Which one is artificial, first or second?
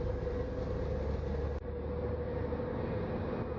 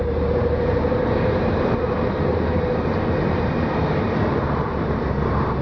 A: second